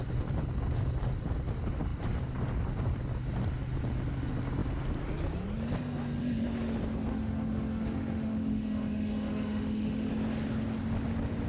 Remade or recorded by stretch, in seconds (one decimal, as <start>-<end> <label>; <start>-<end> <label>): 0.0-7.1 recorded; 7.1-10.1 remade; 10.1-11.5 recorded